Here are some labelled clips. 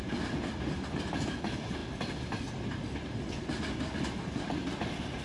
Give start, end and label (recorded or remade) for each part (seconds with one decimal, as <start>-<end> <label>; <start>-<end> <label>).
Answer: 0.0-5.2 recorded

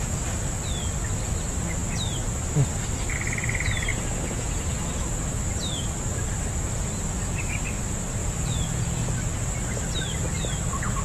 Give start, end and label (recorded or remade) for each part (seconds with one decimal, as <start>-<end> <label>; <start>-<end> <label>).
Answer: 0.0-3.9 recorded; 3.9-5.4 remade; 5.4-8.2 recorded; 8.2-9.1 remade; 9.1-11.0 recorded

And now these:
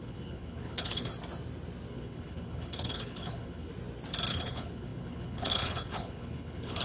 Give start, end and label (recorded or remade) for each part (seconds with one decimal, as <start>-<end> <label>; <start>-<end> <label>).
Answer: 0.0-1.1 remade; 1.1-1.9 recorded; 1.9-3.7 remade; 3.7-4.3 recorded; 4.3-6.8 remade